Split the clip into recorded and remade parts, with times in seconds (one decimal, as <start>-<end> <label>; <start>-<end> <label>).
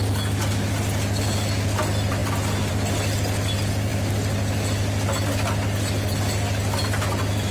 0.0-7.5 recorded